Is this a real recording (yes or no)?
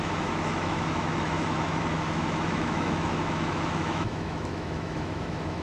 no